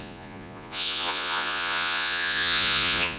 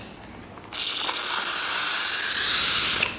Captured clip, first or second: second